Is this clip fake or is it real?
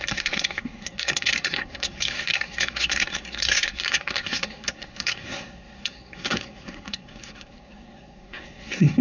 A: fake